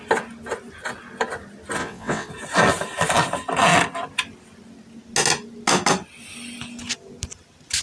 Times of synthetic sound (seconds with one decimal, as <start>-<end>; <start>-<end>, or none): 1.8-2.3